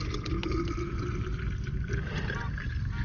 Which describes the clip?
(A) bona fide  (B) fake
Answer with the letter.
A